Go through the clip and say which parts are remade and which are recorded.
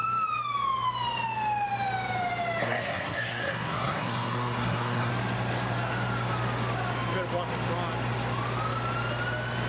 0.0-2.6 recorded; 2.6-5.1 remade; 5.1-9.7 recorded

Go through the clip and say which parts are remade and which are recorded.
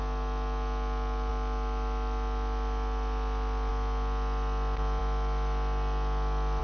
0.0-6.6 recorded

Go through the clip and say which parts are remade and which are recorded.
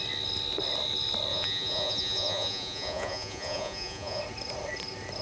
0.0-1.3 recorded; 1.3-4.2 remade; 4.2-5.2 recorded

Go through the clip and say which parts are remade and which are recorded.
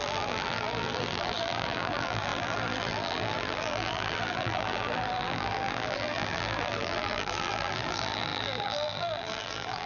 0.0-9.9 remade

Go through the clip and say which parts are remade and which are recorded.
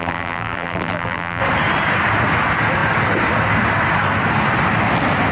0.0-1.4 remade; 1.4-5.3 recorded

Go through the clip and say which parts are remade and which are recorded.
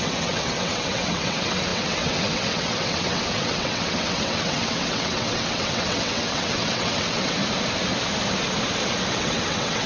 0.0-7.4 remade; 7.4-9.1 recorded; 9.1-9.9 remade